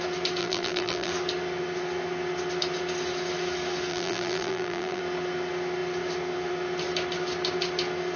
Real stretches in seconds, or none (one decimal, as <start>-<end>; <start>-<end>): 0.0-0.4; 1.1-3.9; 5.0-8.2